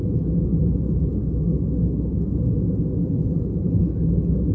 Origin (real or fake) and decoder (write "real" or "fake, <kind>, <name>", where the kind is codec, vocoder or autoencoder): real